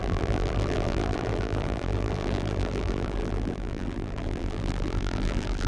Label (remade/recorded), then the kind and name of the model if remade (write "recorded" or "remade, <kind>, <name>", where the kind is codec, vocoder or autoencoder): remade, vocoder, BigVGAN v2